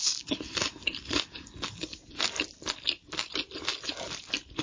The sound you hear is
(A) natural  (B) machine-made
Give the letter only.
A